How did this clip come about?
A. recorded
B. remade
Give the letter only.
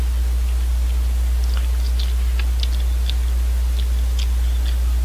A